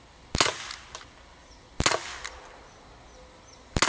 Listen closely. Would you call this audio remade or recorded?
recorded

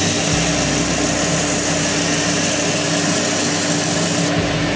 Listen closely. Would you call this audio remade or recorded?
recorded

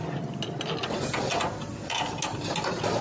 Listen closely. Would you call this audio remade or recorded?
recorded